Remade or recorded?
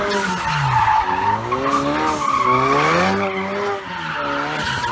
recorded